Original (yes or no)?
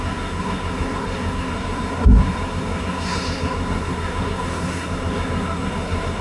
no